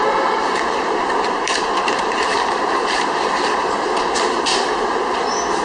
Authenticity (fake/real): fake